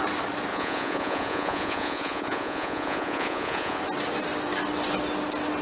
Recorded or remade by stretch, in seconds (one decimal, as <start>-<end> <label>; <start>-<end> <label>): 0.0-0.5 recorded; 0.5-3.8 remade; 3.8-5.6 recorded

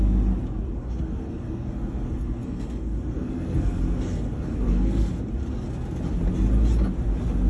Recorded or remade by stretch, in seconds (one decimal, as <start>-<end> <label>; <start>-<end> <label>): 0.0-0.8 recorded; 0.8-5.1 remade; 5.1-7.5 recorded

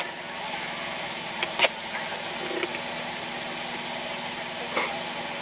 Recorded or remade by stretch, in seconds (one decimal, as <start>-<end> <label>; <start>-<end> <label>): 0.0-5.4 recorded

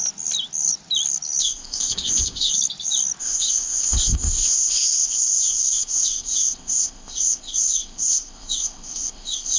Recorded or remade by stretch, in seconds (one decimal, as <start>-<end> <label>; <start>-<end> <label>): 0.0-1.4 recorded; 1.4-2.5 remade; 2.5-3.2 recorded; 3.2-9.6 remade

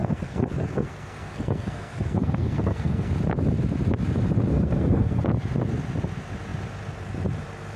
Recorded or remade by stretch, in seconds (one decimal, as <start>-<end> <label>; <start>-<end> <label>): 0.0-3.1 remade; 3.1-4.5 recorded; 4.5-5.2 remade; 5.2-7.8 recorded

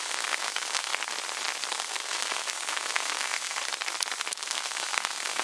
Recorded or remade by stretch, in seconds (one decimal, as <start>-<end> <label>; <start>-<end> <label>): 0.0-0.9 remade; 0.9-1.7 recorded; 1.7-3.6 remade; 3.6-4.3 recorded; 4.3-5.4 remade